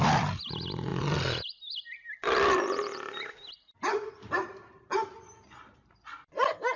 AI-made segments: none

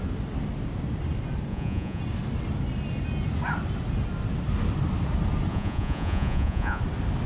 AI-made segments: 1.5-2.0; 5.5-6.8

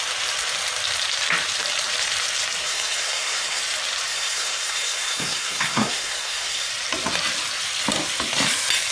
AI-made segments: 2.6-3.6; 4.1-6.7

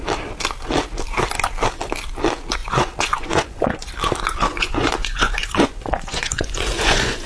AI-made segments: 2.6-3.9; 4.5-7.3